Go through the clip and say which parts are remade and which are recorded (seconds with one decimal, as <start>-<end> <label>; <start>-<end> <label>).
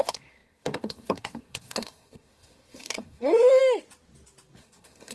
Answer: 0.0-3.6 remade; 3.6-4.6 recorded; 4.6-5.1 remade